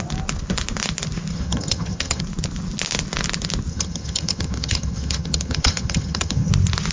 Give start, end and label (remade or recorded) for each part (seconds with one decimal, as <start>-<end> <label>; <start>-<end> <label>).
0.0-1.3 recorded; 1.3-2.2 remade; 2.2-3.7 recorded; 3.7-6.5 remade; 6.5-6.9 recorded